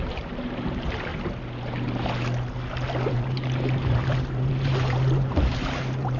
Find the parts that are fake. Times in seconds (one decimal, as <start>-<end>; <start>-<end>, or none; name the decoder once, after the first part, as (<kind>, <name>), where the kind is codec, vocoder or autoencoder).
0.0-1.1 (vocoder, BigVGAN v2); 3.1-6.2

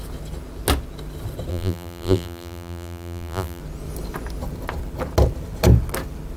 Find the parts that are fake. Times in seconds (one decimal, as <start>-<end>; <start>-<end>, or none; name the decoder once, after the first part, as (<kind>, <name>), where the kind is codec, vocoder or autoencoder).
1.5-3.6 (vocoder, BigVGAN v2)

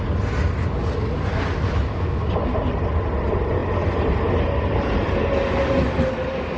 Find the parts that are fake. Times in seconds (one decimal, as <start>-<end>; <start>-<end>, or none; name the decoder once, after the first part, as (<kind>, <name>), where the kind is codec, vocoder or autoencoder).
none